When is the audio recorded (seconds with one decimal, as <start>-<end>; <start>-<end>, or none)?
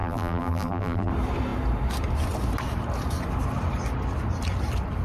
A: 1.1-5.0